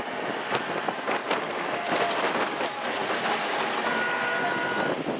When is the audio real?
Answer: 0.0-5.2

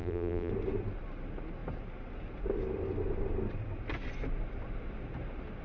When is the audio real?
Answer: 0.5-5.6

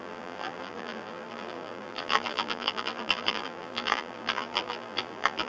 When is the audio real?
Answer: none

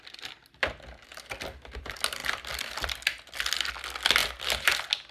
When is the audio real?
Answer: 0.0-1.1; 1.8-2.2; 3.7-5.1

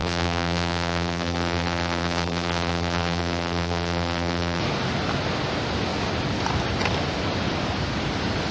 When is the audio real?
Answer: 4.6-8.5

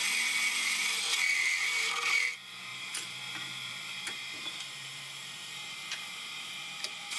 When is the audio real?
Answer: 0.0-2.7

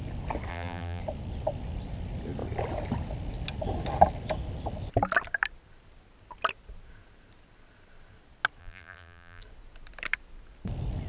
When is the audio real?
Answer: 0.0-0.5; 1.0-8.6; 9.4-11.1